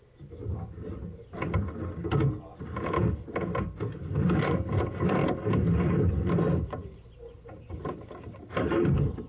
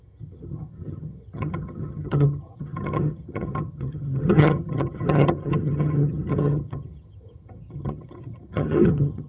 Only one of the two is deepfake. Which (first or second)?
second